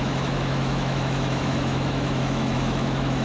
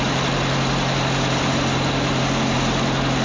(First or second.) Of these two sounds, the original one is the second